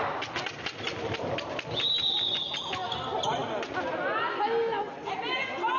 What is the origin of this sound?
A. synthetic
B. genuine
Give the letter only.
B